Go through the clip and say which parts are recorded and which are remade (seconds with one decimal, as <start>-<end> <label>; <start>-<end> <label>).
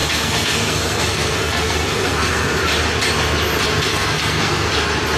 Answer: 0.0-2.6 remade; 2.6-3.9 recorded; 3.9-4.7 remade; 4.7-5.2 recorded